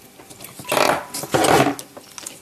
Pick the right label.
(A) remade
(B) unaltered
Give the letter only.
B